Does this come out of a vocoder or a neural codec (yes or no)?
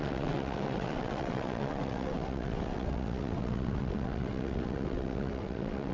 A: yes